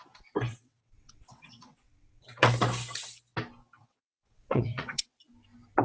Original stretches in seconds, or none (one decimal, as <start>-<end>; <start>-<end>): 0.0-0.5; 2.5-3.8; 5.1-5.8